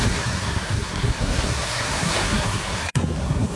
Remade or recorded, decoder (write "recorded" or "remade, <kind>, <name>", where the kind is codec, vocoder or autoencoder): remade, codec, SNAC